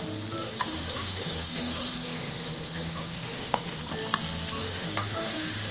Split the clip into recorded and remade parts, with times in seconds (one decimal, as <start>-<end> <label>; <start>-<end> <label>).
0.0-0.4 recorded; 0.4-3.8 remade; 3.8-4.6 recorded; 4.6-5.7 remade